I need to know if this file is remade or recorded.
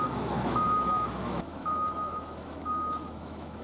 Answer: remade